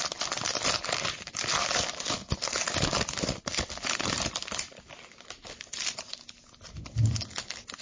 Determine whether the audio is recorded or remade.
recorded